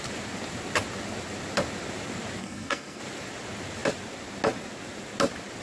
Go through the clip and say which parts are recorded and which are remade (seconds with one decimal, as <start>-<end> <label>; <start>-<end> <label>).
0.0-2.4 recorded; 2.4-3.0 remade; 3.0-5.6 recorded